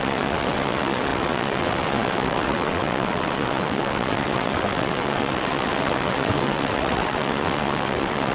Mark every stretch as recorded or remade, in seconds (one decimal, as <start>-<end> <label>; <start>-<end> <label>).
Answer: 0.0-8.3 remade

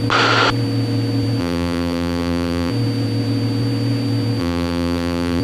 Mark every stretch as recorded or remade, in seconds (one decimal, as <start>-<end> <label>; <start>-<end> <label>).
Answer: 0.0-1.4 recorded; 1.4-2.7 remade; 2.7-4.4 recorded; 4.4-5.4 remade

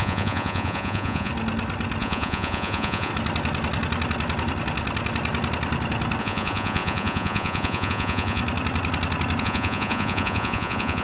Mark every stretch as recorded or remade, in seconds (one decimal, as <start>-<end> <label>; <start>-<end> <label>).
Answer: 0.0-1.3 remade; 1.3-2.0 recorded; 2.0-3.1 remade; 3.1-6.2 recorded; 6.2-8.4 remade; 8.4-9.4 recorded; 9.4-11.0 remade

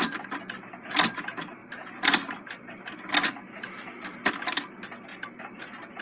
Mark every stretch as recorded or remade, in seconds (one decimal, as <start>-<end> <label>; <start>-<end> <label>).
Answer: 0.0-1.6 recorded; 1.6-3.1 remade; 3.1-5.1 recorded; 5.1-5.6 remade; 5.6-6.0 recorded

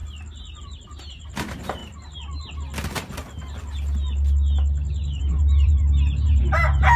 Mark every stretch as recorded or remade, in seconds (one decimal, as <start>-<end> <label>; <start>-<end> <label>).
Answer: 0.0-0.6 recorded; 0.6-1.8 remade; 1.8-5.2 recorded; 5.2-7.0 remade

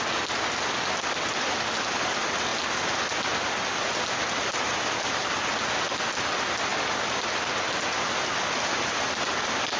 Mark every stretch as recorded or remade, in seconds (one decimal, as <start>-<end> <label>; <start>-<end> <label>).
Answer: 0.0-9.8 recorded

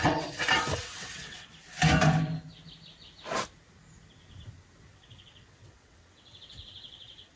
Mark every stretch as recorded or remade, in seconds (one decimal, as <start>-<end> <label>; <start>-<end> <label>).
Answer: 0.0-1.5 remade; 1.5-4.9 recorded; 4.9-7.4 remade